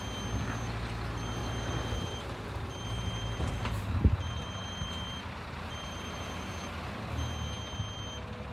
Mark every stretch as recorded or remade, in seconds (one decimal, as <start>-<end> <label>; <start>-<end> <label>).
0.0-1.4 recorded; 1.4-6.5 remade; 6.5-8.5 recorded